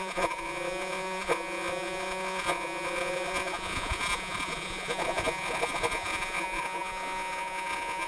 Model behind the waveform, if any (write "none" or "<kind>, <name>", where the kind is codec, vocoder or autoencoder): vocoder, Vocos